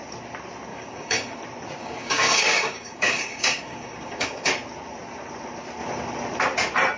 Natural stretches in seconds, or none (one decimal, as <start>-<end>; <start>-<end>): 0.0-0.7; 1.4-1.8; 4.5-7.0